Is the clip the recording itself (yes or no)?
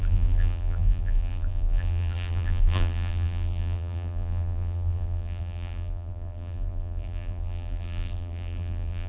no